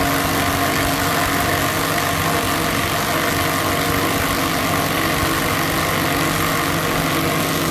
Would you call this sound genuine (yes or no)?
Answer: yes